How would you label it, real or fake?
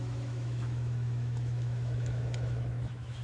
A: fake